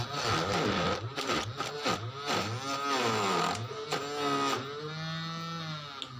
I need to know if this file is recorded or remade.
recorded